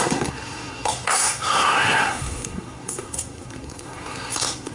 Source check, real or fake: fake